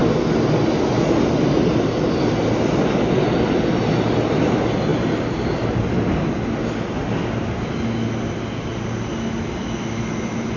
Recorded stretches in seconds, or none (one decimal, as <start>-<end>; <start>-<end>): 0.0-10.6